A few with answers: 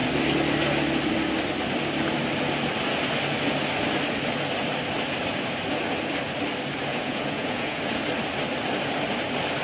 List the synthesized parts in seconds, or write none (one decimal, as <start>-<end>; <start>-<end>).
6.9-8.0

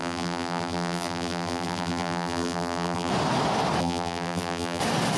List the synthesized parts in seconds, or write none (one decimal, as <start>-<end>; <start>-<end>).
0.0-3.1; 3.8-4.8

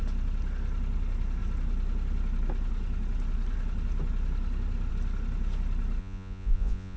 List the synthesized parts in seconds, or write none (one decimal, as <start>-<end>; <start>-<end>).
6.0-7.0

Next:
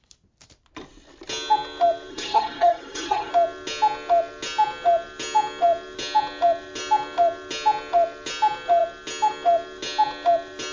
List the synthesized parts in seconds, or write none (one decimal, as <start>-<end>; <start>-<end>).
2.1-3.3

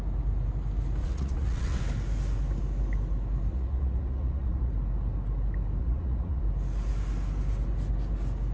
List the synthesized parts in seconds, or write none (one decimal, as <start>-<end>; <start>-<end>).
1.0-1.8; 3.5-4.7; 5.8-6.4

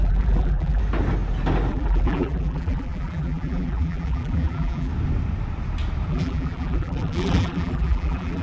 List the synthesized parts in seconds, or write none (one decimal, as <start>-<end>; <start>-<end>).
0.0-0.8; 1.7-4.9; 6.1-8.4

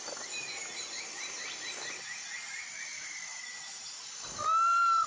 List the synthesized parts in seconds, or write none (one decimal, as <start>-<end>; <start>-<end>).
none